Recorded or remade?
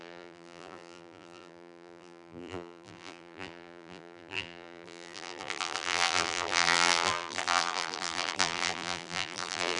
remade